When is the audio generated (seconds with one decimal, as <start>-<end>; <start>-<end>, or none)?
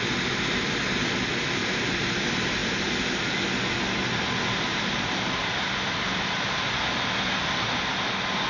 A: 1.6-2.2; 2.6-3.2; 4.7-6.3